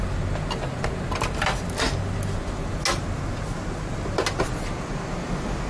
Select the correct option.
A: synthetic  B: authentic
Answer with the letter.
B